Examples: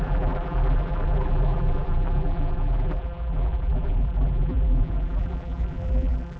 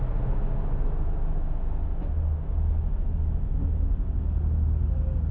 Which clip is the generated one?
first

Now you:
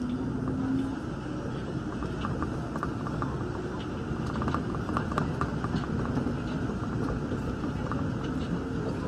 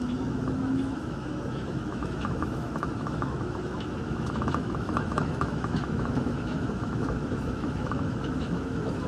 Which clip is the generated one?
second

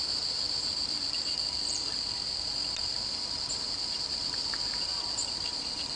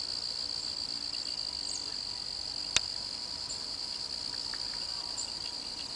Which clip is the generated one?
first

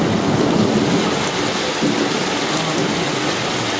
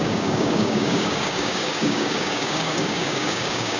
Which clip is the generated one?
second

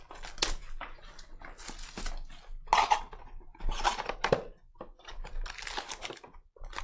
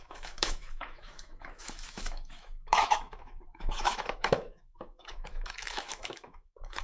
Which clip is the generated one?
second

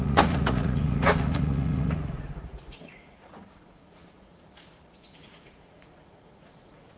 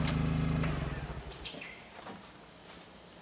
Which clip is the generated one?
first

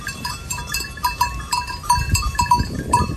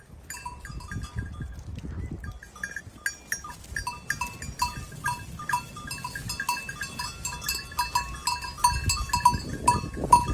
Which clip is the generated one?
first